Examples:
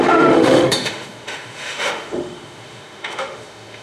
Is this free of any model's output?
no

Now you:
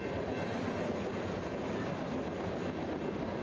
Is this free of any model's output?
yes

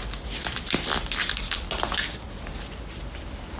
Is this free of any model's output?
yes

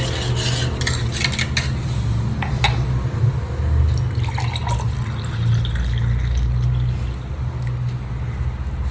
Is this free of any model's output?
yes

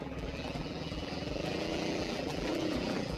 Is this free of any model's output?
no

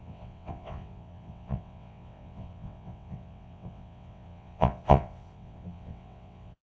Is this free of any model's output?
no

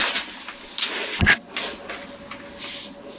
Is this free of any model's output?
yes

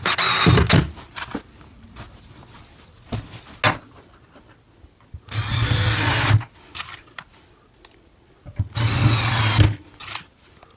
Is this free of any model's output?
yes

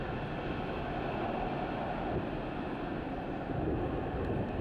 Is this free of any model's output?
yes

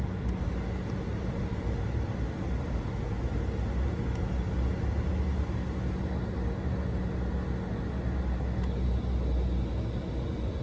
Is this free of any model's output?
yes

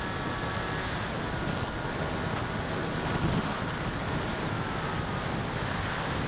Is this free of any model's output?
yes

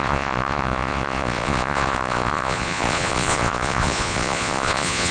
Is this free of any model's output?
no